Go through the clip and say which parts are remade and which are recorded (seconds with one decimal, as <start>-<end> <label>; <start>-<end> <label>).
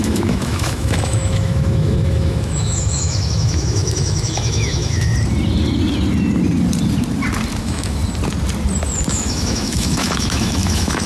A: 0.0-5.1 remade; 5.1-7.6 recorded; 7.6-8.0 remade; 8.0-9.1 recorded; 9.1-11.1 remade